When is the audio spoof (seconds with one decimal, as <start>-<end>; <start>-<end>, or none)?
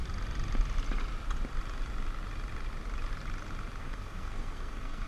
3.8-5.1